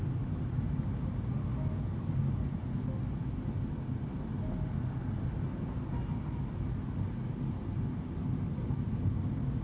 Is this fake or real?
real